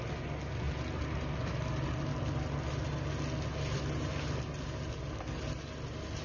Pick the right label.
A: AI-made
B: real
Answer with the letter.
B